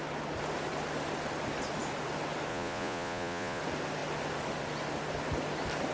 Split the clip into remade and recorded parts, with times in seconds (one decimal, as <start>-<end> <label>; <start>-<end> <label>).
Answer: 0.0-2.5 recorded; 2.5-3.6 remade; 3.6-5.9 recorded